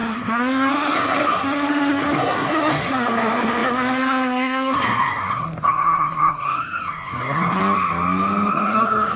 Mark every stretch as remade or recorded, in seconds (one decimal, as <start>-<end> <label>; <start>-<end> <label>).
0.0-7.6 remade; 7.6-8.5 recorded; 8.5-9.2 remade